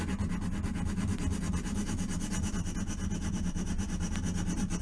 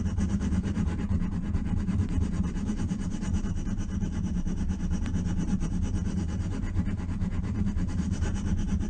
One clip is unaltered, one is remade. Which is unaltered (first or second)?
first